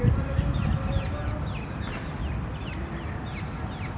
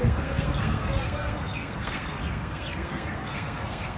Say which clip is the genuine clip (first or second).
first